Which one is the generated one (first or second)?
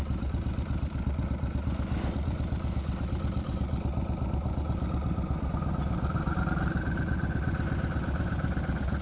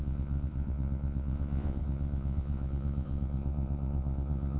second